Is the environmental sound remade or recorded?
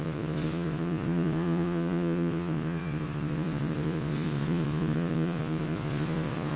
remade